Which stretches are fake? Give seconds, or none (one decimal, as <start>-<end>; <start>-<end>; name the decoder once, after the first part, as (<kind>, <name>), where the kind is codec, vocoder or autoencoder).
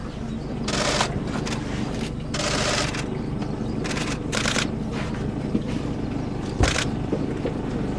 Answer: 3.4-5.9 (vocoder, BigVGAN v2); 6.4-7.3